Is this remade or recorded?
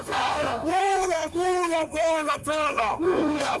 remade